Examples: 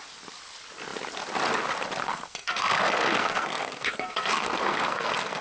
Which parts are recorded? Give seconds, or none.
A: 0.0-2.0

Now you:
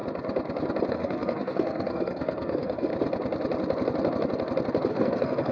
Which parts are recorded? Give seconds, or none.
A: 0.0-0.9; 2.9-4.9